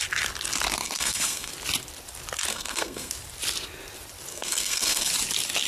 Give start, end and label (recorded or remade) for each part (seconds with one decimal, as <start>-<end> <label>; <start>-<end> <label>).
0.0-0.8 recorded; 0.8-1.5 remade; 1.5-2.5 recorded; 2.5-3.1 remade; 3.1-4.3 recorded; 4.3-5.1 remade; 5.1-5.7 recorded